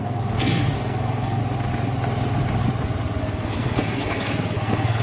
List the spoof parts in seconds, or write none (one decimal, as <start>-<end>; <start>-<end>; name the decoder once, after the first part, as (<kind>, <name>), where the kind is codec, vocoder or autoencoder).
0.0-1.4 (codec, SNAC); 3.2-5.0

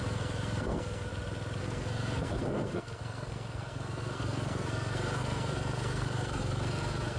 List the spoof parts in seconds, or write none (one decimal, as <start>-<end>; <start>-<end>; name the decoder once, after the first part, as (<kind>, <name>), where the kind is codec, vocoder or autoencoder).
0.0-1.1 (codec, SNAC); 1.6-7.2

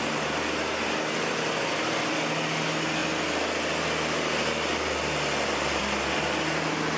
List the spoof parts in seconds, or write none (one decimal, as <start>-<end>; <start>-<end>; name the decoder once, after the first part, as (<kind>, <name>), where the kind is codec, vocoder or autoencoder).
none